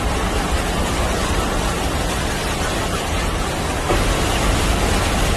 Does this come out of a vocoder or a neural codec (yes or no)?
no